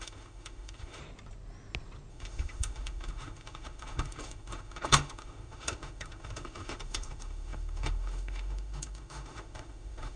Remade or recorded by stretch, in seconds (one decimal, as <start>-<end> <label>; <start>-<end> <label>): 0.0-1.0 remade; 1.0-2.1 recorded; 2.1-10.2 remade